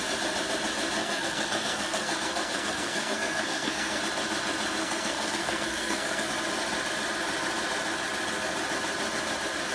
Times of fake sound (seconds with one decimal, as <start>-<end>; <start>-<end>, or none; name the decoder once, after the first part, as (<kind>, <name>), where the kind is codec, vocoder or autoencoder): 1.0-4.0 (codec, SNAC); 4.8-6.3